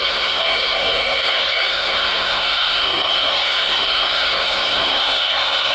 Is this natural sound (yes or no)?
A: no